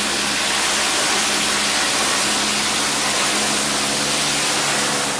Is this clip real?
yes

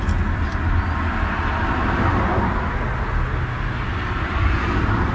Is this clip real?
yes